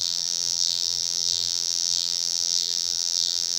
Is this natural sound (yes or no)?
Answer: no